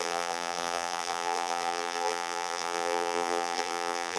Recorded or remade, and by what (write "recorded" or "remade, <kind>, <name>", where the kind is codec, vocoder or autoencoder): remade, vocoder, BigVGAN v2